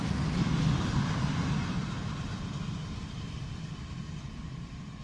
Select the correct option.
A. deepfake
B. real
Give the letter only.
B